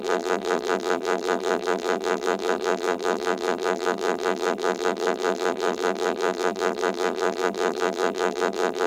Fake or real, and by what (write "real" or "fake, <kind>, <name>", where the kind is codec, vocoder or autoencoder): fake, vocoder, BigVGAN v2